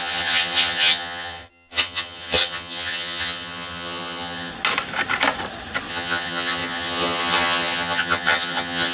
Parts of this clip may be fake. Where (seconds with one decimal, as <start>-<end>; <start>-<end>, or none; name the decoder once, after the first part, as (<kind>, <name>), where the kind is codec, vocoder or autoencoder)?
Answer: 0.0-4.5 (vocoder, HiFi-GAN); 5.9-8.9